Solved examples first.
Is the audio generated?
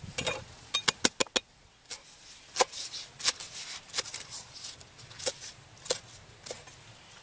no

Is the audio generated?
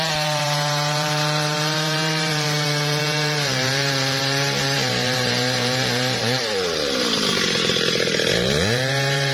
yes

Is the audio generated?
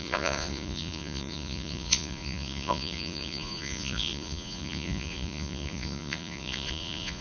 yes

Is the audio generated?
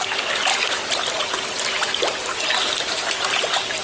no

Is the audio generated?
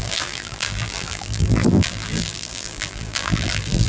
yes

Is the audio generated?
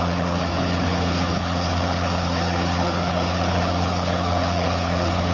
yes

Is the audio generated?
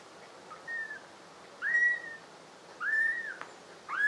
no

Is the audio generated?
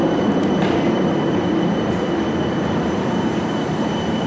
yes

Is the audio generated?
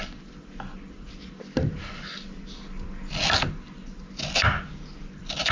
no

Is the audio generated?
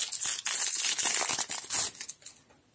no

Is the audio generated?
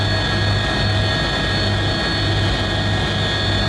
no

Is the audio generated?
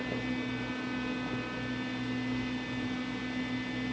no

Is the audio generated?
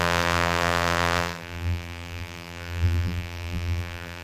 yes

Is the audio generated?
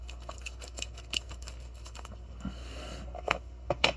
yes